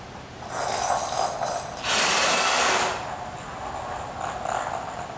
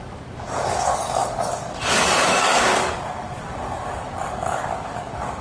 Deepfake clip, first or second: second